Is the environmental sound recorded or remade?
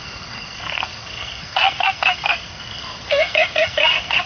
remade